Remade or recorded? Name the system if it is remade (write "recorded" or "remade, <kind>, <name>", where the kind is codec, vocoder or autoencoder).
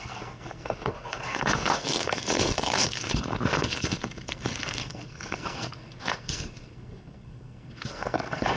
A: remade, codec, SNAC